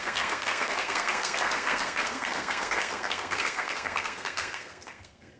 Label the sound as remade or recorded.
remade